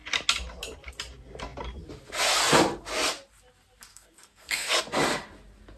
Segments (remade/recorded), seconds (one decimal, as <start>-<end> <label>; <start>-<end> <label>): 0.0-3.9 recorded; 3.9-4.8 remade; 4.8-5.8 recorded